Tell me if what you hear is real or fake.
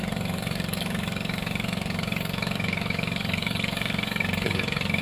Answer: fake